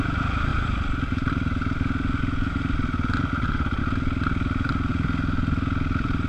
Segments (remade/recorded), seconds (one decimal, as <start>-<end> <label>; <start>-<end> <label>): 0.0-0.5 recorded; 0.5-3.8 remade; 3.8-4.9 recorded; 4.9-6.3 remade